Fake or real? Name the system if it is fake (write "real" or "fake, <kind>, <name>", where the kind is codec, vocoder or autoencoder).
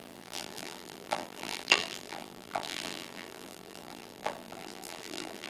fake, vocoder, BigVGAN v2